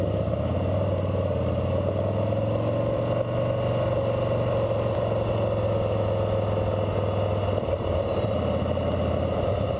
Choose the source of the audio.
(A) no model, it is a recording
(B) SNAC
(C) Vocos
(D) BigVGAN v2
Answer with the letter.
A